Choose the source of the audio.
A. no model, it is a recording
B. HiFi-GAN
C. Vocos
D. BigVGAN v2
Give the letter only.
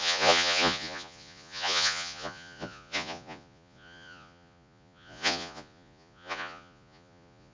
C